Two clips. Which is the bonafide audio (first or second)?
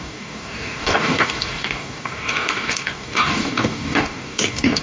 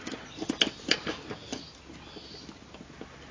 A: second